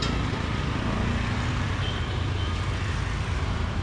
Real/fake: real